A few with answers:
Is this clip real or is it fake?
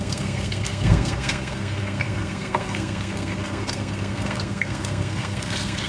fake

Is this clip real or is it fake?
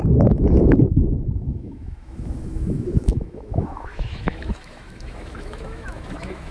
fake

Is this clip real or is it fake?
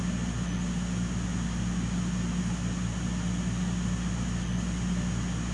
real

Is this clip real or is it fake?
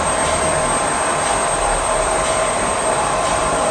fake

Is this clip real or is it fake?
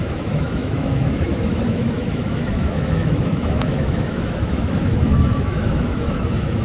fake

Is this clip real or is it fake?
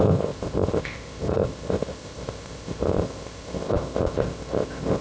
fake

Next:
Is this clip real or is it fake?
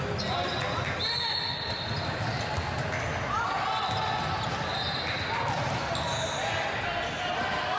real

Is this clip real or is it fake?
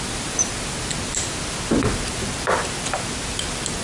real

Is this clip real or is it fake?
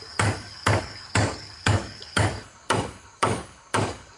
fake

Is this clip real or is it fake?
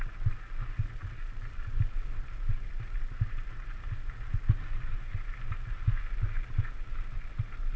real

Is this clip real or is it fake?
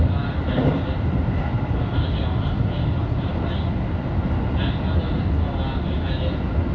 real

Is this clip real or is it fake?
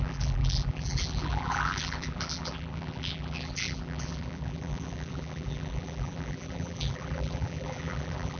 fake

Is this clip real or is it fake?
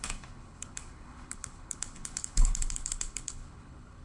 fake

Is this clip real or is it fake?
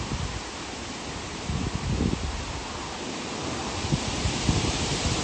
real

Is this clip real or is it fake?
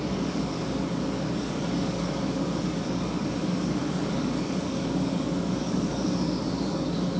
fake